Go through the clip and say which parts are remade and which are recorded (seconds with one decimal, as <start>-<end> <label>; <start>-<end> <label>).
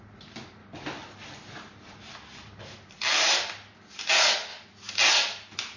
0.0-5.8 recorded